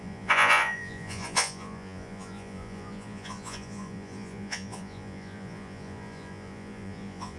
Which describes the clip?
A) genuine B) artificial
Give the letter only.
B